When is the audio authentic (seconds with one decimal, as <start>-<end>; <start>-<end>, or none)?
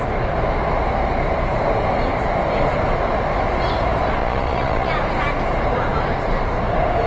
0.0-4.2; 4.9-7.1